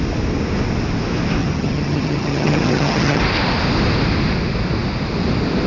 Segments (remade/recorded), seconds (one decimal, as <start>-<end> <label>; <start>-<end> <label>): 0.0-1.4 recorded; 1.4-3.2 remade; 3.2-5.7 recorded